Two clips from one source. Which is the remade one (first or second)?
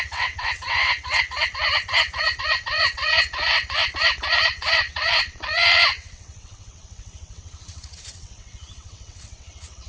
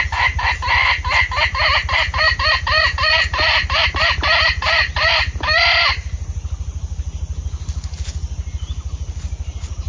first